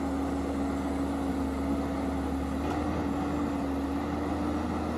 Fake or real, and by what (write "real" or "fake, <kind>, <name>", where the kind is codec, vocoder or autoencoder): real